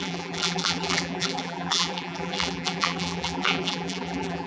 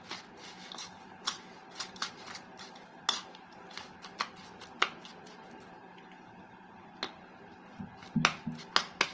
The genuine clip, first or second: second